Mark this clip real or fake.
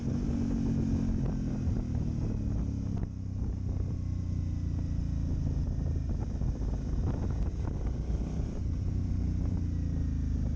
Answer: real